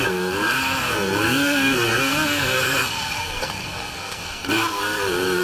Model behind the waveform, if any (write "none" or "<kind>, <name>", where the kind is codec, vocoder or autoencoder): codec, SNAC